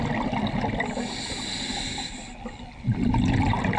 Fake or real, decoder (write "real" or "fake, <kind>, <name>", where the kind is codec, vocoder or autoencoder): real